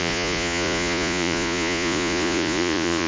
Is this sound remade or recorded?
remade